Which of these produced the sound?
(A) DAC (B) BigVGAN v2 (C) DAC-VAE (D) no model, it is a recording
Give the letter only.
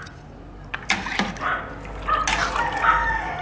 D